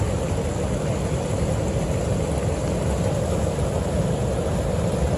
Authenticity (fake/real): real